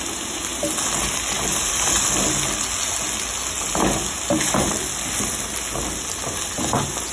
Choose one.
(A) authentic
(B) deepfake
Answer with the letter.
A